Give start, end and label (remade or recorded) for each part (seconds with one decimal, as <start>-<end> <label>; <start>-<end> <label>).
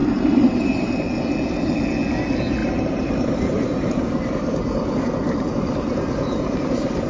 0.0-1.1 remade; 1.1-2.6 recorded; 2.6-7.1 remade